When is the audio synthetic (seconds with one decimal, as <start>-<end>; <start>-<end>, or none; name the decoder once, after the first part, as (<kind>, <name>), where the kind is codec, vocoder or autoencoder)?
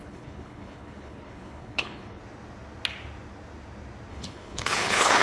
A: 0.0-2.2 (codec, HILCodec); 4.1-5.2